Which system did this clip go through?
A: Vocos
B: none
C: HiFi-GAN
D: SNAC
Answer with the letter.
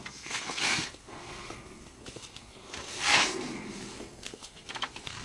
D